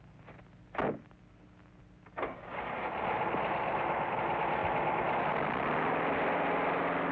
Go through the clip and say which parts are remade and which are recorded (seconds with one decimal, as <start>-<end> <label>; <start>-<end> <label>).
0.0-7.1 recorded